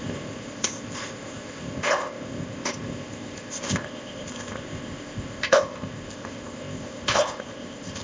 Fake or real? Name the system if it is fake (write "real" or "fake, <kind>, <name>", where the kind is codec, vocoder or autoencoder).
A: fake, codec, ZipCodec